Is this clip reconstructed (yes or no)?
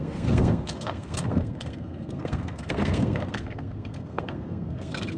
yes